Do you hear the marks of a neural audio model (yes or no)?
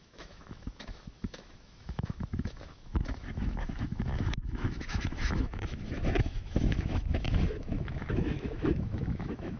yes